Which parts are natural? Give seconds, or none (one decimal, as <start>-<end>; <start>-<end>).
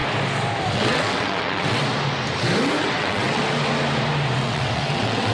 0.0-0.7; 1.8-2.8; 3.4-4.4